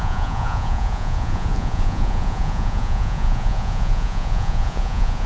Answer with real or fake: fake